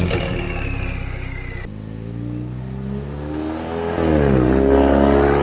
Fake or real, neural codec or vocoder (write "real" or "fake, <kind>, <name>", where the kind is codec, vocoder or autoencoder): real